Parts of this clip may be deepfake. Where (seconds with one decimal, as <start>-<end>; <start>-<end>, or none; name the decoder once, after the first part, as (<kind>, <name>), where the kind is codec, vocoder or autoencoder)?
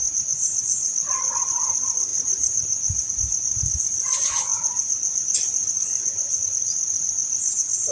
0.0-7.9 (vocoder, BigVGAN v2)